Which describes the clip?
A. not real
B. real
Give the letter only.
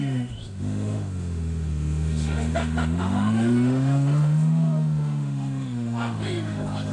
A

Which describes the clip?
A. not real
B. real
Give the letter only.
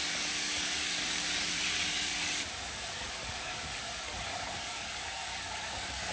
A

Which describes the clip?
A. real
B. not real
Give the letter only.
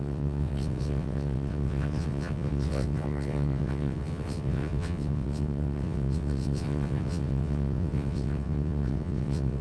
B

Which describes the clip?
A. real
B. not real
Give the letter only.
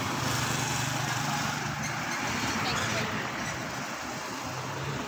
A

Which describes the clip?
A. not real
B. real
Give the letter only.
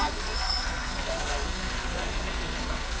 A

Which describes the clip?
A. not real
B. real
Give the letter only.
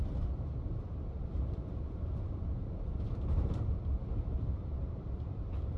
A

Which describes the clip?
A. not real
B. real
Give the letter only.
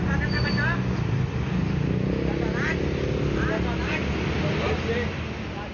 B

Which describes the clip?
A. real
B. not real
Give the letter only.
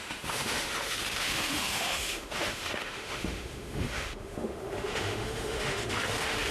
B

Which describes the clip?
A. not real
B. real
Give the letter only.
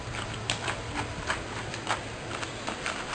A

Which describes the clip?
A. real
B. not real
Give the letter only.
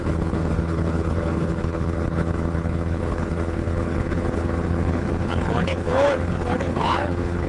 B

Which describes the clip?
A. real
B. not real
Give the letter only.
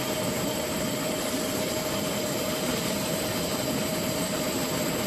B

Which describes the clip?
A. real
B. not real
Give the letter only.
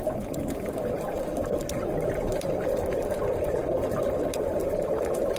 A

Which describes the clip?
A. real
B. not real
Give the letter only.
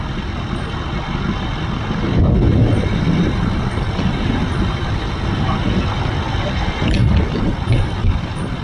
A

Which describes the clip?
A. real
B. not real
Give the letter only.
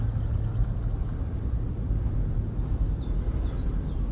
A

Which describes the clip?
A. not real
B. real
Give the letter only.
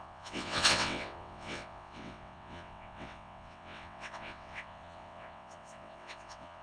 A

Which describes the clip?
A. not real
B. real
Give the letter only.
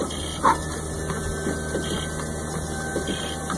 B